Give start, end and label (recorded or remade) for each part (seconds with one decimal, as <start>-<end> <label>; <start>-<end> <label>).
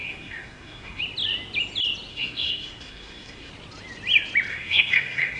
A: 0.0-1.0 remade; 1.0-2.1 recorded; 2.1-3.5 remade; 3.5-4.5 recorded; 4.5-5.4 remade